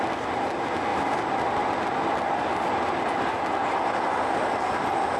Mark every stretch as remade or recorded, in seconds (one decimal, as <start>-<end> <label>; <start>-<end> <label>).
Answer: 0.0-5.2 recorded